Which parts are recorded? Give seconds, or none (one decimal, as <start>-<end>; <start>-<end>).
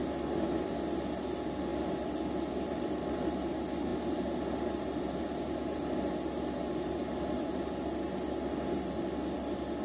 0.0-9.8